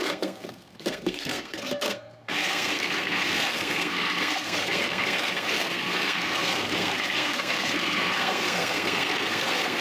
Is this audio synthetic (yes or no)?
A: yes